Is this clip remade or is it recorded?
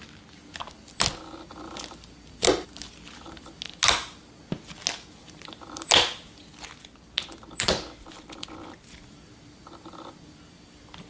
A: recorded